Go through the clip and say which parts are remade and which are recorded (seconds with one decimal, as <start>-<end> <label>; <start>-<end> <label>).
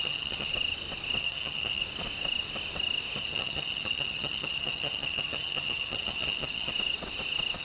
0.0-0.5 remade; 0.5-1.2 recorded; 1.2-1.8 remade; 1.8-3.2 recorded; 3.2-6.7 remade; 6.7-7.6 recorded